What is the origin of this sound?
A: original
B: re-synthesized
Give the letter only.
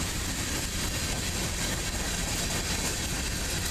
A